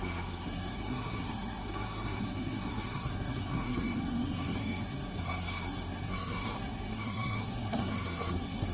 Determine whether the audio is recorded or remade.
remade